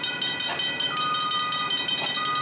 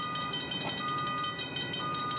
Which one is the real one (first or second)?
second